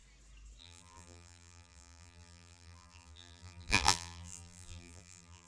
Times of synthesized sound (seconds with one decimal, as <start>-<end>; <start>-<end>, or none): 0.6-5.5